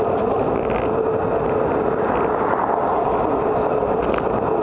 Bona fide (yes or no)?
yes